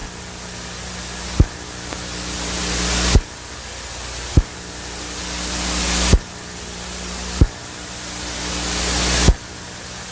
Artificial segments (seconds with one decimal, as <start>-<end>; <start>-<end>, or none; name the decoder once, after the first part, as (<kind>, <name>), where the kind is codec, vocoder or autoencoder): none